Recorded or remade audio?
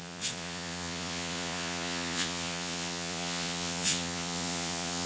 remade